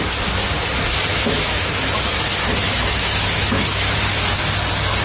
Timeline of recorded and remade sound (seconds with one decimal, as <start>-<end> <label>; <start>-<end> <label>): 0.0-1.1 recorded; 1.1-1.7 remade; 1.7-2.6 recorded; 2.6-4.1 remade; 4.1-5.0 recorded